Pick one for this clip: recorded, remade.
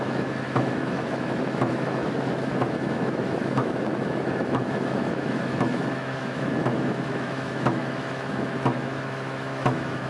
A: remade